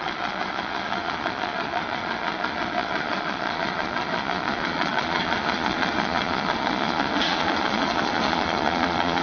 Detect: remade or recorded remade